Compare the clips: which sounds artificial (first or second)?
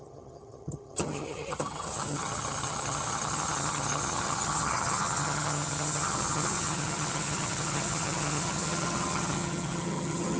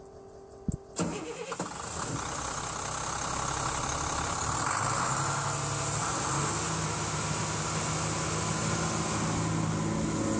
first